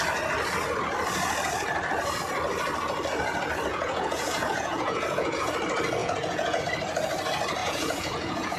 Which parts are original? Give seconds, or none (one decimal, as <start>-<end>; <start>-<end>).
0.0-3.7; 5.5-6.0; 6.6-7.6